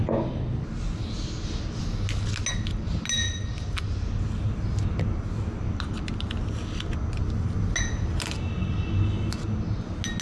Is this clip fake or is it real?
real